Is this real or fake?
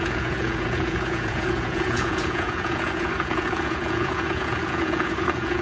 fake